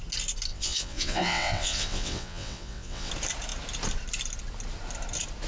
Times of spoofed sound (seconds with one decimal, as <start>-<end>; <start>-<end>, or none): 0.5-3.1